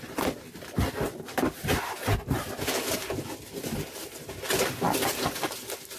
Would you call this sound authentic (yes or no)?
no